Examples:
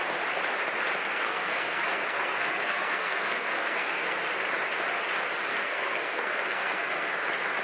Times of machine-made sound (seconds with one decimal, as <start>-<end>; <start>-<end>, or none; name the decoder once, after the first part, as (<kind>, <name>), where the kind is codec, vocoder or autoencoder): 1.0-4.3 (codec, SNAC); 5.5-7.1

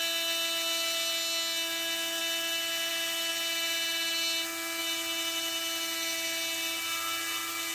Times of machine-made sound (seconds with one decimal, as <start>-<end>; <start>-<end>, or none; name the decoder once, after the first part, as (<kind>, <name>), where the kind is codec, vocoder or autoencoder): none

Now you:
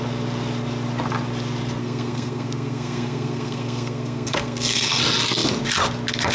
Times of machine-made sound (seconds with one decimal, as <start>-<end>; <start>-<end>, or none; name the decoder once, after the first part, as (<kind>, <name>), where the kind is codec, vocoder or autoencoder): 1.8-5.0 (codec, SNAC)

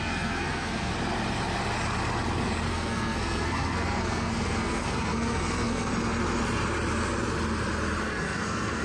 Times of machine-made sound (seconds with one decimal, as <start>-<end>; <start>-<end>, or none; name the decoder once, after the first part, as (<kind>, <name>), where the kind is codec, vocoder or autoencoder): 0.0-0.9 (codec, SNAC); 2.7-5.9; 8.0-8.8